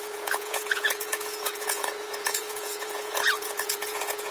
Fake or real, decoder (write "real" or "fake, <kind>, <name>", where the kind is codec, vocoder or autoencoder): fake, vocoder, Vocos